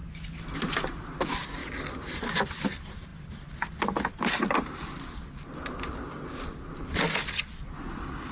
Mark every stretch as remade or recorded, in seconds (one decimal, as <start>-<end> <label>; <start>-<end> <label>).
0.0-8.3 recorded